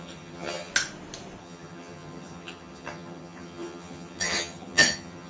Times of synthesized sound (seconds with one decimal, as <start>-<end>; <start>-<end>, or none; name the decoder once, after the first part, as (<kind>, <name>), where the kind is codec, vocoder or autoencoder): 0.0-0.7 (vocoder, HiFi-GAN); 1.4-5.3